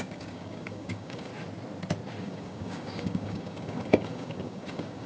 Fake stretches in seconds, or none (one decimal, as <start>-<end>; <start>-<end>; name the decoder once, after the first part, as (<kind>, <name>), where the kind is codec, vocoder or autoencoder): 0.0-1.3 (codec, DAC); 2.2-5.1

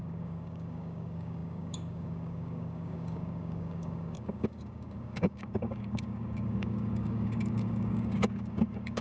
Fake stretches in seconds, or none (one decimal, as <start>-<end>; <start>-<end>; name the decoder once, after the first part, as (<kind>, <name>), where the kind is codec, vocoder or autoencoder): 0.0-9.0 (codec, DAC)

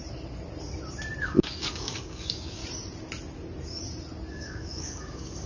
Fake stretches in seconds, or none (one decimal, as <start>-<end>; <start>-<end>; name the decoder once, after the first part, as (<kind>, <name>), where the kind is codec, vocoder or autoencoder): 1.2-2.6 (codec, DAC); 4.3-5.5

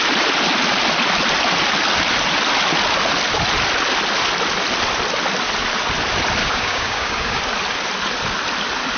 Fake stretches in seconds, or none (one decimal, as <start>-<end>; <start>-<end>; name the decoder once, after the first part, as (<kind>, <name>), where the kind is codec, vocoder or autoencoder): 6.4-7.4 (codec, DAC)

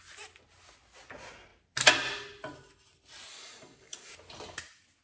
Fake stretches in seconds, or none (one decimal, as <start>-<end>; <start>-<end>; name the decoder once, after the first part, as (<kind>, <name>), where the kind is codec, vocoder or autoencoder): 3.3-4.1 (codec, DAC)